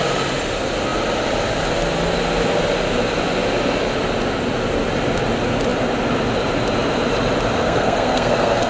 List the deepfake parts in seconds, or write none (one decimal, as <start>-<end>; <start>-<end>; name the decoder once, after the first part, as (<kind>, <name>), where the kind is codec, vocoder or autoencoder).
7.6-8.7 (codec, SNAC)

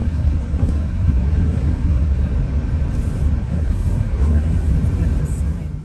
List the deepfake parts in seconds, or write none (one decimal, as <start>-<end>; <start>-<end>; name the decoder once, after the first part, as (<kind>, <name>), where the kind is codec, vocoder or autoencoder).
0.0-2.3 (codec, SNAC); 3.4-4.7

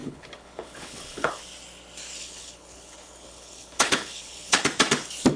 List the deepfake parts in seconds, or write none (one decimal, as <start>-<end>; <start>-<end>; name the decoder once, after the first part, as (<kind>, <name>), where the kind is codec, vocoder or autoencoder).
0.0-1.4 (codec, HILCodec); 2.2-4.6

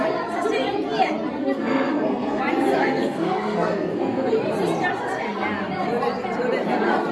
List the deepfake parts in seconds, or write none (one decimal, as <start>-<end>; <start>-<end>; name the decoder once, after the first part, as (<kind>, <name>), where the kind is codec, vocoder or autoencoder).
1.4-2.4 (codec, SNAC); 2.8-4.3

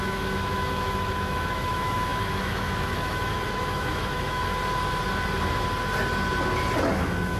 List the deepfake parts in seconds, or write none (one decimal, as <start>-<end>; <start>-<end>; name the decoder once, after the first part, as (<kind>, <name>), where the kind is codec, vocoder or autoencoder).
0.0-4.4 (autoencoder, DAC-VAE); 6.9-7.4

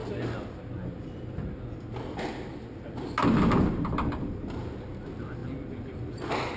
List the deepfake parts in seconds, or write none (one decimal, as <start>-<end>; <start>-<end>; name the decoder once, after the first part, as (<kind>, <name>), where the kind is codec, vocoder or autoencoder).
none

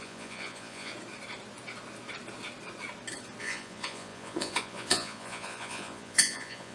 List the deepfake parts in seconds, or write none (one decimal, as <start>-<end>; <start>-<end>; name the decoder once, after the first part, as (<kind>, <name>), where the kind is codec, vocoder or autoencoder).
0.0-0.9 (vocoder, Vocos); 3.4-6.7